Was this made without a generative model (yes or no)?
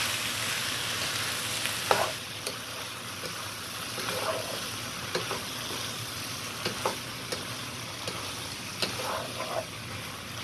yes